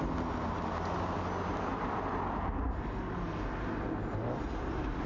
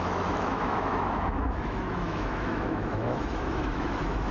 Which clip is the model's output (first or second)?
second